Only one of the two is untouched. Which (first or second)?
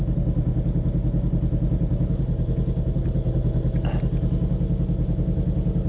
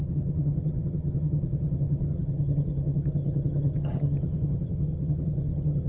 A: first